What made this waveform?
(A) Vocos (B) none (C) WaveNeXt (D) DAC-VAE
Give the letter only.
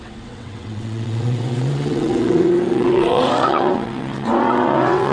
C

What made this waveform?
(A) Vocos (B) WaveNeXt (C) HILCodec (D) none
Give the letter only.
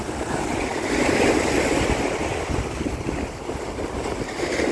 D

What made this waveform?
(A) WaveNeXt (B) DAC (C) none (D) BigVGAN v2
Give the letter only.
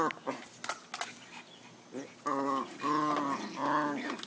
C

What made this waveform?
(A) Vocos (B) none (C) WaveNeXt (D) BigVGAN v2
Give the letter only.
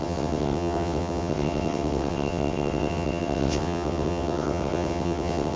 C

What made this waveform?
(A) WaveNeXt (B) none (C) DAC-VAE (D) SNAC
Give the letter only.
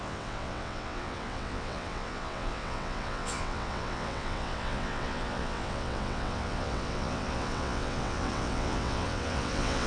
A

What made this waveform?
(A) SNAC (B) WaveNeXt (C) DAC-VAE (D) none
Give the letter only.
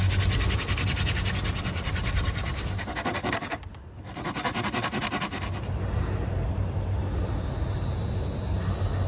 D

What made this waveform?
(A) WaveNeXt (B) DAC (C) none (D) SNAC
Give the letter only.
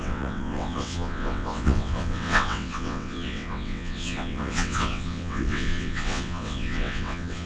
A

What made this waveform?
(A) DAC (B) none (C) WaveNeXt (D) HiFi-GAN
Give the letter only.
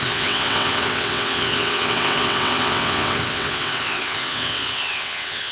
C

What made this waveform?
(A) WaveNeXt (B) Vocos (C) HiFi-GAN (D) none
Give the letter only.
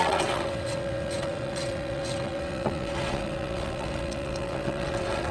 A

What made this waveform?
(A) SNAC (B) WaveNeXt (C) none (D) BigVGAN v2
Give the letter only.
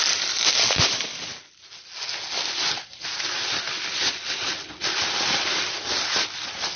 C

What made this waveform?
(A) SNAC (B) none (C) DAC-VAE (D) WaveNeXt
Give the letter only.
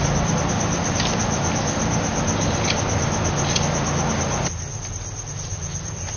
B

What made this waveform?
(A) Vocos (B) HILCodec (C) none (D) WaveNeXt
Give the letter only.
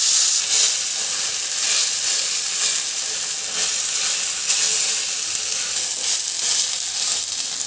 C